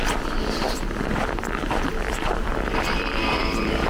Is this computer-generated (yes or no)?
yes